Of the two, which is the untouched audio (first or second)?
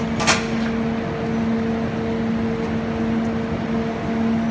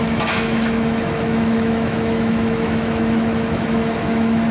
first